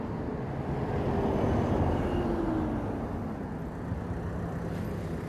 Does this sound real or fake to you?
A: real